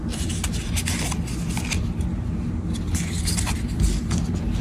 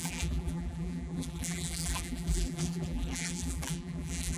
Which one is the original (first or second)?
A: first